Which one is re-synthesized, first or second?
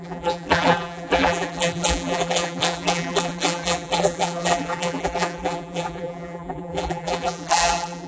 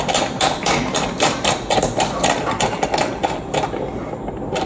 first